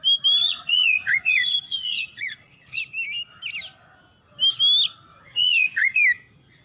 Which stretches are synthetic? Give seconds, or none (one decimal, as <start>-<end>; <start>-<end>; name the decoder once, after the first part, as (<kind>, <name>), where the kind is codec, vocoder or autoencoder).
0.4-2.8 (vocoder, Vocos); 5.1-6.0